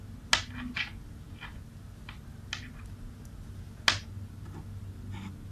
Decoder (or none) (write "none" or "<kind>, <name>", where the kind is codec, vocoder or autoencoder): none